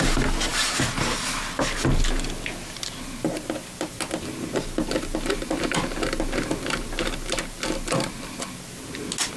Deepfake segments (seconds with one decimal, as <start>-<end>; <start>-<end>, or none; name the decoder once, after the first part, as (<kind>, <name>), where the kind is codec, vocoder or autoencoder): none